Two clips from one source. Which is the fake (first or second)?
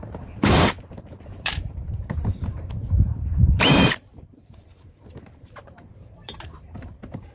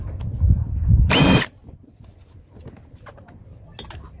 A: first